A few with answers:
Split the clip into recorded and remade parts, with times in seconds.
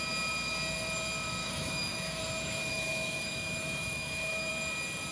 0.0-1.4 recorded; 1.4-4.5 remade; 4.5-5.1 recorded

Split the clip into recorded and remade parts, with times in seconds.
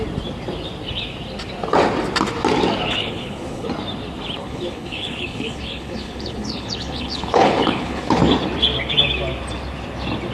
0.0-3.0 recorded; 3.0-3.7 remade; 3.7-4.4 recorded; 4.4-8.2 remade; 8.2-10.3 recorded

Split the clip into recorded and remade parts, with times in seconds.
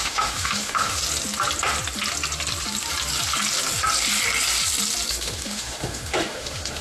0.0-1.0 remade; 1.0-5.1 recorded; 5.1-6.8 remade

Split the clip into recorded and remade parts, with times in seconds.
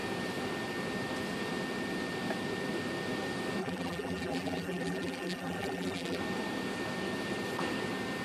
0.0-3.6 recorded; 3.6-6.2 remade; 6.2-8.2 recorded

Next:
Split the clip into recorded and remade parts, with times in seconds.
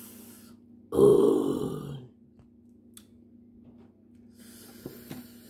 0.0-5.5 recorded